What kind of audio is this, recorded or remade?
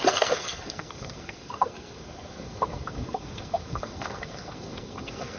remade